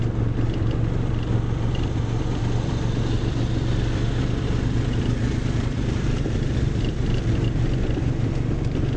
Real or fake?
fake